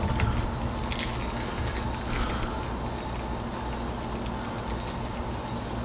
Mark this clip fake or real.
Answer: real